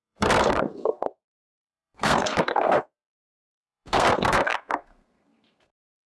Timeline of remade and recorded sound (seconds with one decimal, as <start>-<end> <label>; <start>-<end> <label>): 0.0-6.1 remade